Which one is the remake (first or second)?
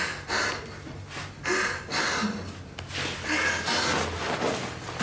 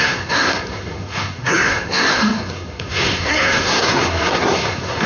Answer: second